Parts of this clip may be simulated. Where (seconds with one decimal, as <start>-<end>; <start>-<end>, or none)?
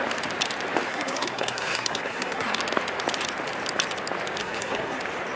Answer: 0.9-2.6; 4.4-5.0